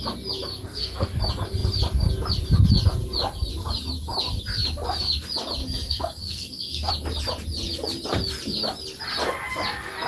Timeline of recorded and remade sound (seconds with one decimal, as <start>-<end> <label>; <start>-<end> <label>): 0.0-0.5 recorded; 0.5-1.2 remade; 1.2-5.6 recorded; 5.6-6.9 remade; 6.9-10.1 recorded